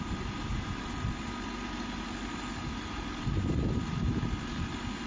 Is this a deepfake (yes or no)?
no